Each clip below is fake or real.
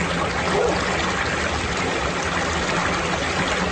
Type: real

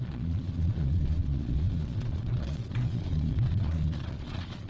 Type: fake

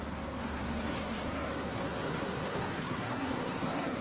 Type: fake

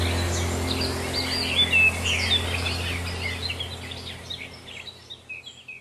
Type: real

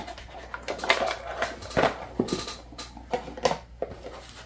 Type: real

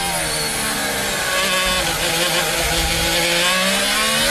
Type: real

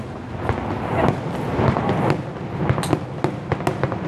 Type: real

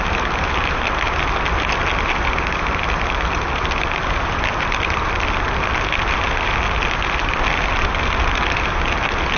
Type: real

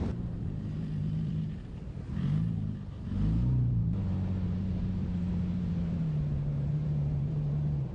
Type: fake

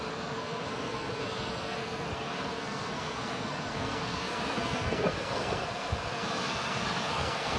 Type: fake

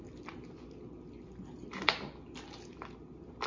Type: real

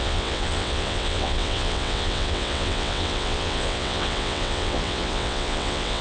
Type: fake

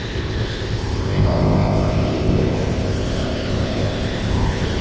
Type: fake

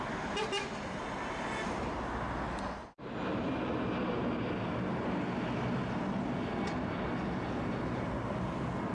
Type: real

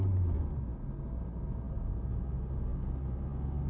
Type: real